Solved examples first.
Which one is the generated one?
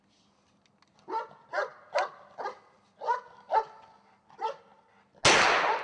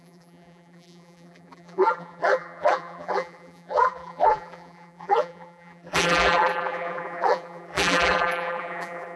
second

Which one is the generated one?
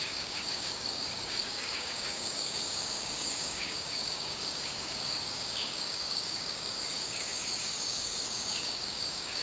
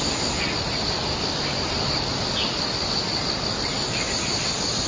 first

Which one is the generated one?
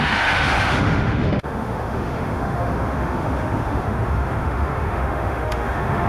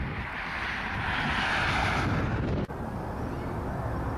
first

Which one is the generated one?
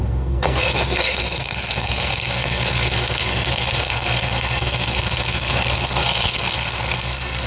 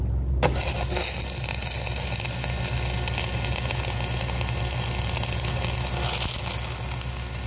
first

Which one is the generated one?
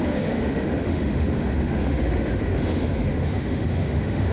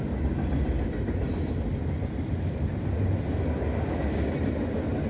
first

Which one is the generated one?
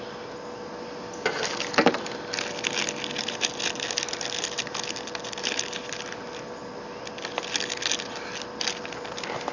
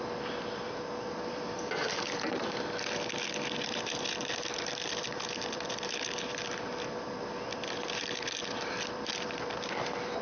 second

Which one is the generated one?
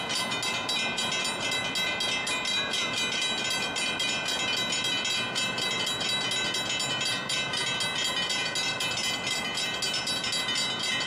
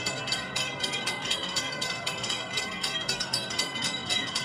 second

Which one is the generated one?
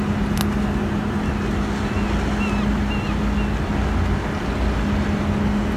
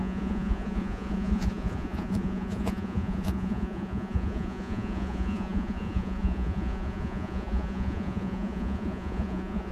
second